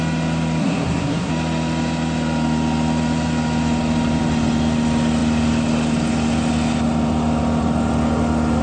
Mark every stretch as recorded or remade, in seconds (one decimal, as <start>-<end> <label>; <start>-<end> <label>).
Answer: 0.0-0.6 recorded; 0.6-1.3 remade; 1.3-8.6 recorded